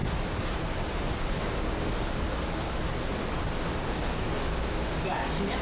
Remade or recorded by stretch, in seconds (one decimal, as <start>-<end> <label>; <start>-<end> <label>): 0.0-3.8 recorded; 3.8-4.4 remade; 4.4-5.6 recorded